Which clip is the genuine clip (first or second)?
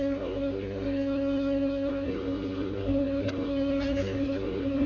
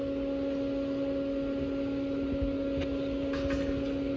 second